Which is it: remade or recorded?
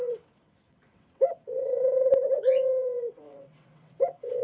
remade